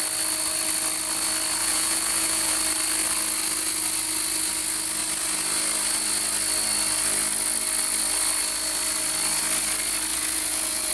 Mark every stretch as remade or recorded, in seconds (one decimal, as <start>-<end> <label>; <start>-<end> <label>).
0.0-1.6 recorded; 1.6-2.5 remade; 2.5-10.1 recorded; 10.1-10.9 remade